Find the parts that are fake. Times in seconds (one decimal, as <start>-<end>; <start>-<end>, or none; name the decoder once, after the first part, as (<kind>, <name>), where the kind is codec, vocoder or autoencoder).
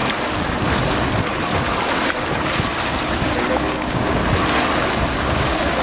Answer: 3.5-4.2 (codec, DAC); 5.2-5.8